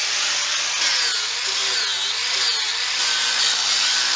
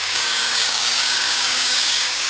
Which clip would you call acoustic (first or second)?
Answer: first